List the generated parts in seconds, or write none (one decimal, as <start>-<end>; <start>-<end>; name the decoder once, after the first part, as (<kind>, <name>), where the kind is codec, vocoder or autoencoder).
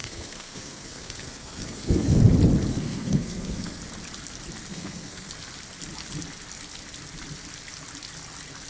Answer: 0.0-2.2 (codec, SNAC); 2.7-3.8; 4.7-5.3